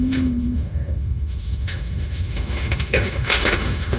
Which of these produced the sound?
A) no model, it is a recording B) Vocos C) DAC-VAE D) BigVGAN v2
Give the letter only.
C